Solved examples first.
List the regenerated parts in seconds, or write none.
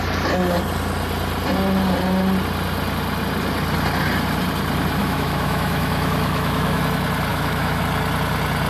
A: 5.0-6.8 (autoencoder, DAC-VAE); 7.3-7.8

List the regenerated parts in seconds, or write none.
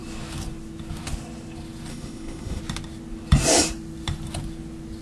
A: 1.9-2.6 (autoencoder, DAC-VAE)